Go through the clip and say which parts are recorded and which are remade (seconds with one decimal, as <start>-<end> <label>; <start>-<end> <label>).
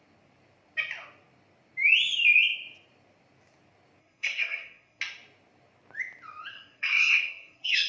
0.0-4.0 recorded; 4.0-5.0 remade; 5.0-6.5 recorded; 6.5-7.9 remade